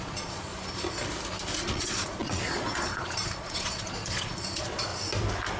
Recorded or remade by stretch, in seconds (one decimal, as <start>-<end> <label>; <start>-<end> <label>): 0.0-0.5 remade; 0.5-1.6 recorded; 1.6-4.9 remade; 4.9-5.6 recorded